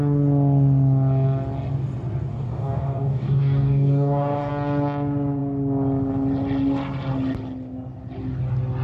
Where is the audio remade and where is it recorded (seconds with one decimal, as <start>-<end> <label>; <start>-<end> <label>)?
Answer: 0.0-2.3 recorded; 2.3-4.5 remade; 4.5-8.8 recorded